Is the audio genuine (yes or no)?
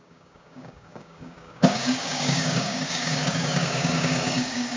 no